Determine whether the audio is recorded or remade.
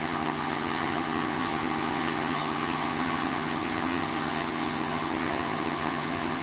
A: remade